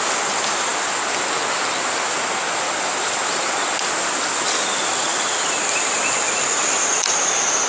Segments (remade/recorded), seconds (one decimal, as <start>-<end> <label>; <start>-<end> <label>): 0.0-7.7 recorded